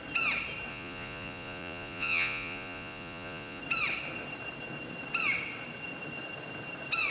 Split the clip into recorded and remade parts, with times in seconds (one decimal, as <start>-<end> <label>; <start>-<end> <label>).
0.0-0.7 recorded; 0.7-3.6 remade; 3.6-7.1 recorded